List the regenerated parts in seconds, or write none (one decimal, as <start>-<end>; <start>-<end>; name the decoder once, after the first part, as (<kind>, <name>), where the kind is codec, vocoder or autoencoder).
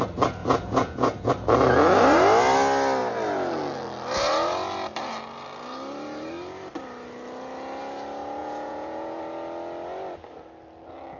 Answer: 0.4-1.3 (vocoder, Vocos); 8.4-9.2